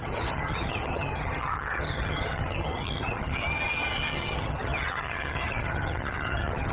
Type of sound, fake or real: fake